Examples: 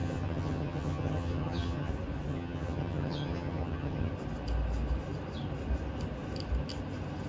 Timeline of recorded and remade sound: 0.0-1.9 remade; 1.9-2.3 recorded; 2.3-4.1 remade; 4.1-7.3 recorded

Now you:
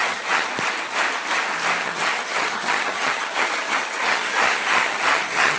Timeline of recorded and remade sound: 0.0-0.5 remade; 0.5-1.8 recorded; 1.8-5.6 remade